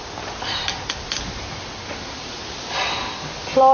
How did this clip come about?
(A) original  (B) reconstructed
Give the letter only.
A